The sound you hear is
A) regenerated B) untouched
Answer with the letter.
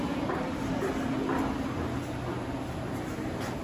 B